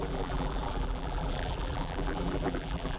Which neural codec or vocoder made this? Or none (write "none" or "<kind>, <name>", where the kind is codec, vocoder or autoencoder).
vocoder, BigVGAN v2